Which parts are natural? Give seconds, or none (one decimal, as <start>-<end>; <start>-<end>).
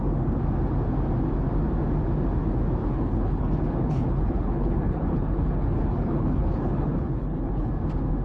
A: 0.0-2.8; 7.7-8.2